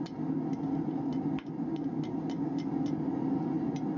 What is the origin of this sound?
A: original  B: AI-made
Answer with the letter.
A